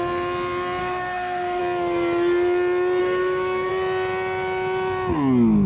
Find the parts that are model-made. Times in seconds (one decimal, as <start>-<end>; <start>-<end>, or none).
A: 0.8-1.6; 3.0-3.7